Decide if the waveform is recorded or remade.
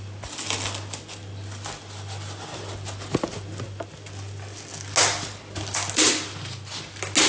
recorded